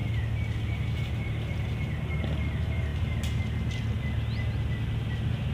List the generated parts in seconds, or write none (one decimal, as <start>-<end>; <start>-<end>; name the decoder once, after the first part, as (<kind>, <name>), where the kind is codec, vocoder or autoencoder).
none